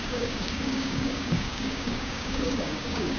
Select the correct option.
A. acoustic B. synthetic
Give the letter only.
B